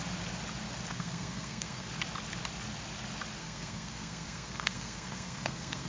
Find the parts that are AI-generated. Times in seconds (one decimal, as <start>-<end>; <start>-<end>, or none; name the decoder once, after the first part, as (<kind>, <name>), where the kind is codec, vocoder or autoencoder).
0.9-1.9 (codec, SNAC); 3.4-5.9